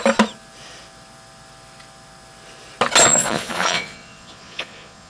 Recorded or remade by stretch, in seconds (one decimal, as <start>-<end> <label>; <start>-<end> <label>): 0.0-3.1 recorded; 3.1-5.1 remade